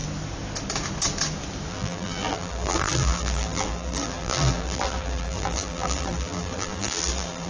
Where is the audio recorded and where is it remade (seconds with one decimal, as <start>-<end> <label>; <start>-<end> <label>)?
0.0-1.7 recorded; 1.7-7.5 remade